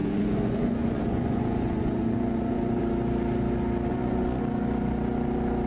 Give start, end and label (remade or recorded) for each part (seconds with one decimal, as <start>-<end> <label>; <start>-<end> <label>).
0.0-2.8 remade; 2.8-3.9 recorded; 3.9-4.4 remade; 4.4-5.7 recorded